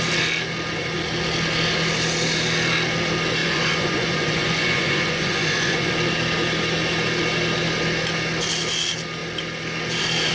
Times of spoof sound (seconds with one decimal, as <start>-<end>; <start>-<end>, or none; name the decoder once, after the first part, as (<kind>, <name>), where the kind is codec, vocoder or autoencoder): 3.4-5.9 (vocoder, Vocos)